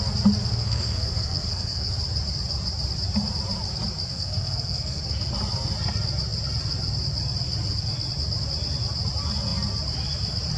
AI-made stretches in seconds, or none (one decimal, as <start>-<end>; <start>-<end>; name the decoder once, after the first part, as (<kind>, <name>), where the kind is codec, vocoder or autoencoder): 0.5-1.9 (codec, SNAC); 4.1-5.0